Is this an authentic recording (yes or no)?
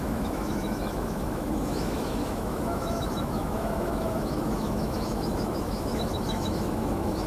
no